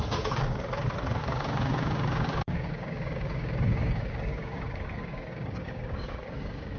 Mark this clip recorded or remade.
remade